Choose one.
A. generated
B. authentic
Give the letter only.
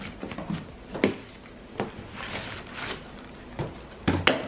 B